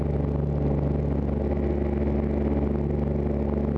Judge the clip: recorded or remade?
recorded